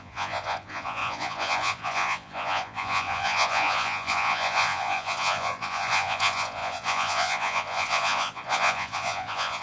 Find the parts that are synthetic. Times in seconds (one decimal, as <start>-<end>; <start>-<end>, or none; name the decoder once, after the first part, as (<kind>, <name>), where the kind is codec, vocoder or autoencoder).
0.0-9.6 (vocoder, Vocos)